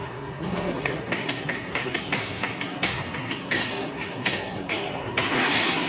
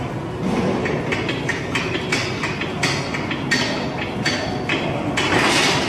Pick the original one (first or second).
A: second